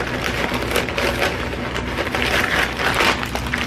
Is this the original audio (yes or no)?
yes